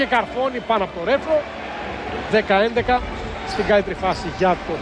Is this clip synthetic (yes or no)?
no